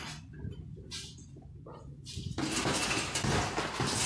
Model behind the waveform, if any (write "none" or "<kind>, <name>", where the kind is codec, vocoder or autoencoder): none